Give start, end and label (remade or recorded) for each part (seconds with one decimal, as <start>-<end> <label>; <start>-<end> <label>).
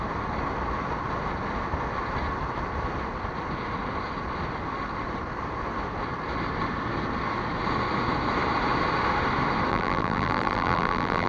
0.0-9.7 recorded; 9.7-11.3 remade